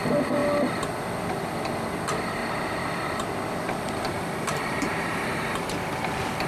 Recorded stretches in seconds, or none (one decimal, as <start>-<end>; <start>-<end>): 0.0-2.4